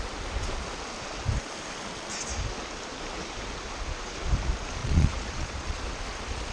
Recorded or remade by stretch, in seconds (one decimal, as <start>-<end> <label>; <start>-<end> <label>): 0.0-4.8 recorded; 4.8-5.8 remade; 5.8-6.5 recorded